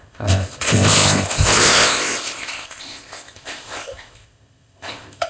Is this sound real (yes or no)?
no